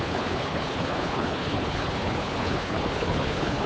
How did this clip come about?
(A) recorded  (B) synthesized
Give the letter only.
B